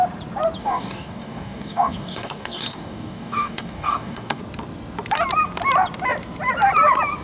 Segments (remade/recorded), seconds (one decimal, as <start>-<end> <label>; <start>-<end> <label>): 0.0-0.6 recorded; 0.6-4.4 remade; 4.4-7.2 recorded